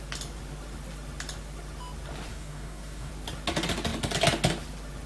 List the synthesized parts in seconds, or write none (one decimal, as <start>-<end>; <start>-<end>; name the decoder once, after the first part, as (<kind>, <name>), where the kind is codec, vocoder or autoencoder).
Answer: 2.3-3.1 (codec, DAC)